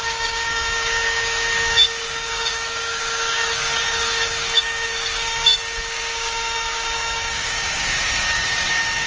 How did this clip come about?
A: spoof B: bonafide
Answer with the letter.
A